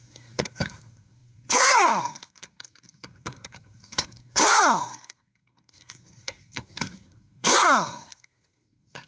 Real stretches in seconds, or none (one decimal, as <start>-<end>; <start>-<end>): none